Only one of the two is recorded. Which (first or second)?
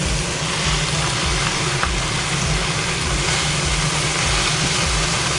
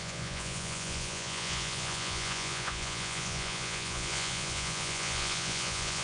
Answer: first